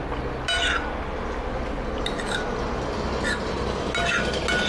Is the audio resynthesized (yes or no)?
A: no